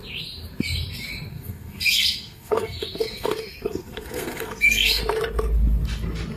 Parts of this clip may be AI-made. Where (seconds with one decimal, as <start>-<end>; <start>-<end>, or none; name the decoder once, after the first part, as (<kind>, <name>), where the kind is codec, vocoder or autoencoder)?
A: 1.3-5.0 (codec, SNAC)